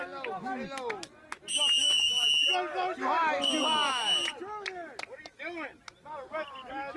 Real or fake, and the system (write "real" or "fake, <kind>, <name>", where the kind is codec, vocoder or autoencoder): real